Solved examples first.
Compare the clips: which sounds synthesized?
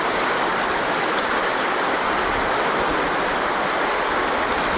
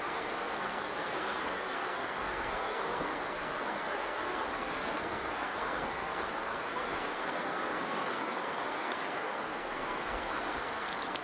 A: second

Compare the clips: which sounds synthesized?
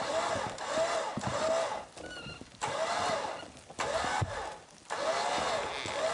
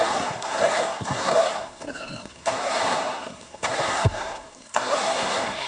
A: second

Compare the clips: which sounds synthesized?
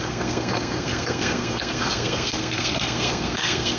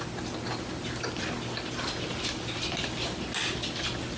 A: first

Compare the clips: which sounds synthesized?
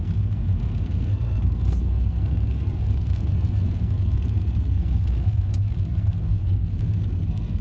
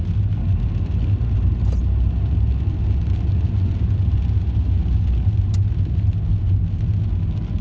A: first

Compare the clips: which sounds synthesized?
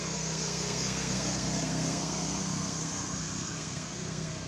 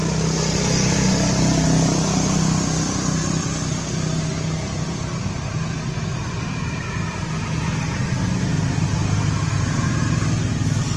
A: first